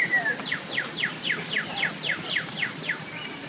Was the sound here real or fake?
real